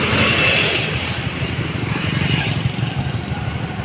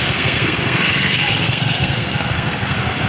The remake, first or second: second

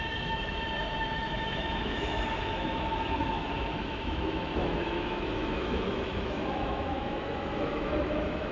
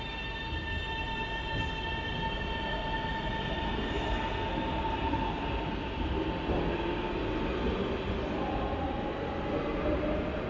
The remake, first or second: first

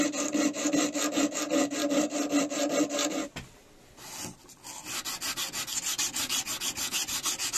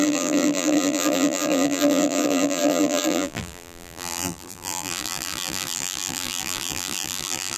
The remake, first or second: second